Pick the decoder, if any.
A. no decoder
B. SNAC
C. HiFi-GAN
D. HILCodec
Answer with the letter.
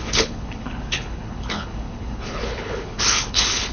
D